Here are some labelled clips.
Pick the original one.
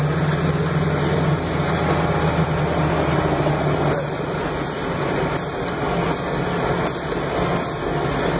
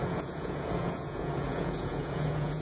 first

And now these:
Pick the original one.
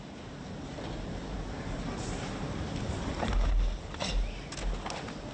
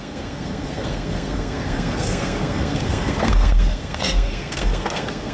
first